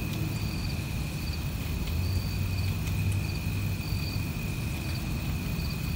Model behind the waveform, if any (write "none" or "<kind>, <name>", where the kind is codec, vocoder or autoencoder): none